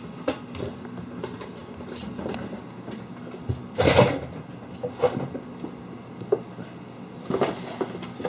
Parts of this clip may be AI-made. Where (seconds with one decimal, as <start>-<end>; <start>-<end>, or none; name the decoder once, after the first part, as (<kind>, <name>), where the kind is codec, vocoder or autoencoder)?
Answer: none